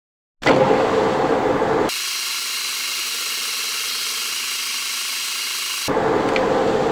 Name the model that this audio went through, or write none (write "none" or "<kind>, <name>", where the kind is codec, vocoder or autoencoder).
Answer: none